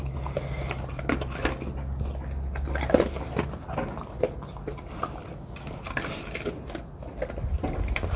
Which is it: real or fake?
real